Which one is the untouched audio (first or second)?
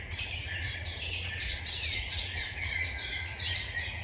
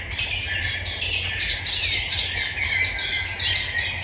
second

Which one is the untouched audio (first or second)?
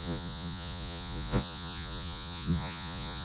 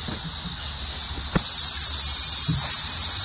second